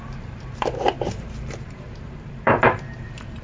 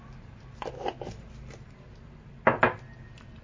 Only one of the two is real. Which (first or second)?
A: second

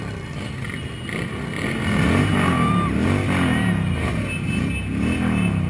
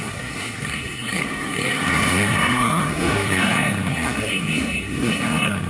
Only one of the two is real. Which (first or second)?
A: first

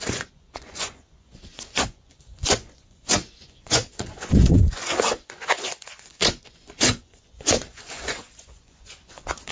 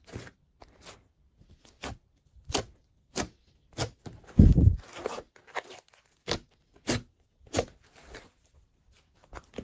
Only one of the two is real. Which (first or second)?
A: second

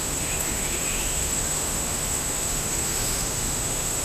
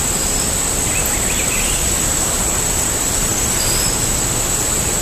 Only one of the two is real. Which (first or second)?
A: second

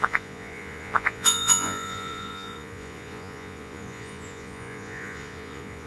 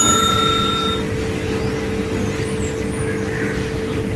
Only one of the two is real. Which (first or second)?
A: second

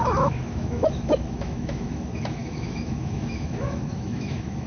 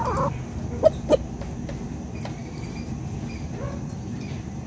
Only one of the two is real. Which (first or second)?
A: second